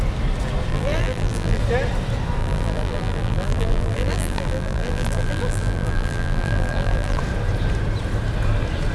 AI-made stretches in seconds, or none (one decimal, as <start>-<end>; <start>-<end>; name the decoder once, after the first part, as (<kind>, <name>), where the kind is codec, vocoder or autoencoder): 0.7-1.6 (vocoder, BigVGAN v2); 2.4-7.2